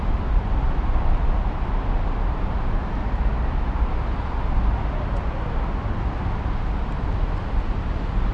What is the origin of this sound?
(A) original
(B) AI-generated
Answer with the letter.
A